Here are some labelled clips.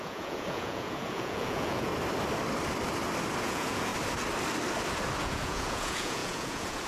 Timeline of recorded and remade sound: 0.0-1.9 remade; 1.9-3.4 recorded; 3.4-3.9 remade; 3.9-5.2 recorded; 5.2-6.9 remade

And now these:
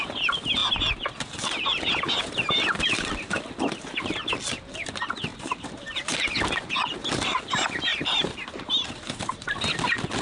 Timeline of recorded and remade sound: 0.0-5.3 recorded; 5.3-6.3 remade; 6.3-7.9 recorded; 7.9-8.5 remade; 8.5-10.2 recorded

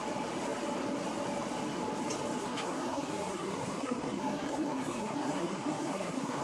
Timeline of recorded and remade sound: 0.0-2.4 recorded; 2.4-6.4 remade

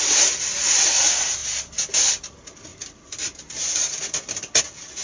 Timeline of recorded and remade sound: 0.0-1.4 recorded; 1.4-2.1 remade; 2.1-2.7 recorded; 2.7-4.6 remade; 4.6-5.0 recorded